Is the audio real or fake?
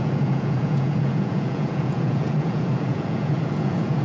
fake